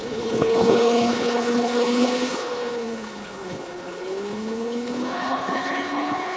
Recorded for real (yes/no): no